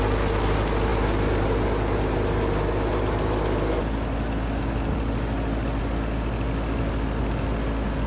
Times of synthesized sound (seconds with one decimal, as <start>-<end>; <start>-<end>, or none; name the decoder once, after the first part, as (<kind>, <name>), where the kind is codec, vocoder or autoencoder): none